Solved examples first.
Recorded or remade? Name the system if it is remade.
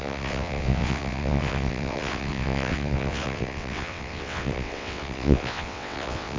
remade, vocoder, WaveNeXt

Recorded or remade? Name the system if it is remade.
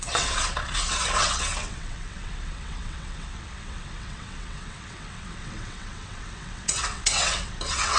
remade, vocoder, WaveNeXt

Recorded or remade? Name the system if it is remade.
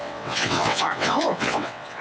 remade, vocoder, WaveNeXt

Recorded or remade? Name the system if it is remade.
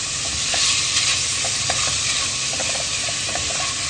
recorded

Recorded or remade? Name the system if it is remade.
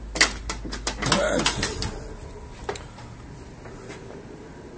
recorded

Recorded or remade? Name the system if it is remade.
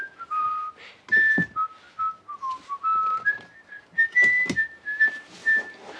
recorded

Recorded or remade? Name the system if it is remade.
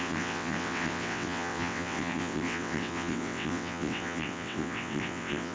remade, vocoder, WaveNeXt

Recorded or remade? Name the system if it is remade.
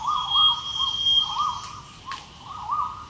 recorded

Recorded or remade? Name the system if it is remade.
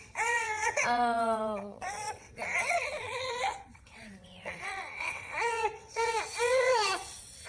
remade, vocoder, WaveNeXt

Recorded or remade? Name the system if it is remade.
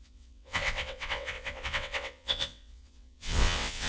remade, vocoder, WaveNeXt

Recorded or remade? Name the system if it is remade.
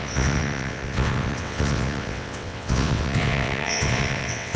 remade, vocoder, WaveNeXt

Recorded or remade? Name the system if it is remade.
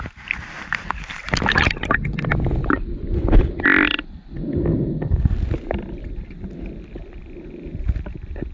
recorded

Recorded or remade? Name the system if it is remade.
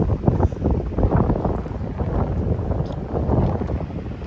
recorded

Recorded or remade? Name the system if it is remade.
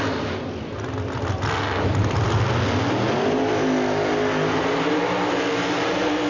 recorded